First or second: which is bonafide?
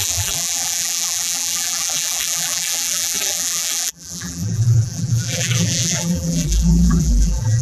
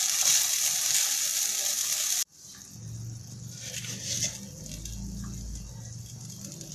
second